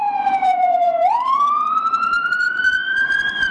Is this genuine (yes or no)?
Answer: no